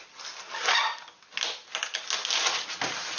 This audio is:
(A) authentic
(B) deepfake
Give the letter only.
A